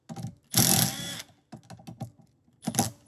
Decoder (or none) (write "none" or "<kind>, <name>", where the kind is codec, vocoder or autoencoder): none